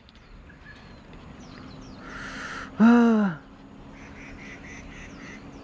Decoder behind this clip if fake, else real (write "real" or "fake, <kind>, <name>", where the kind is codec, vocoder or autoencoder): real